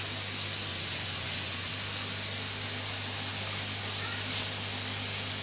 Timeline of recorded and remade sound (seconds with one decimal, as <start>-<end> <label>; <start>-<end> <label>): 0.0-0.7 recorded; 0.7-1.7 remade; 1.7-5.4 recorded